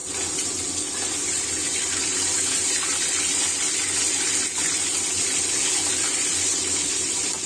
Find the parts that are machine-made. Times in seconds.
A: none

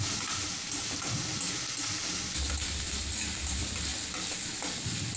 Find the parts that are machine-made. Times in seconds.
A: 0.0-3.9 (vocoder, BigVGAN v2)